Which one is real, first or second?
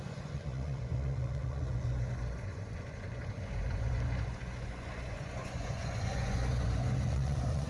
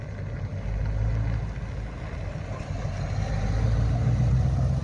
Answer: second